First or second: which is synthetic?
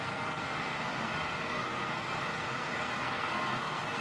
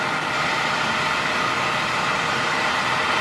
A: first